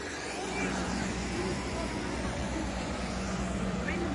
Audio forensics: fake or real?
fake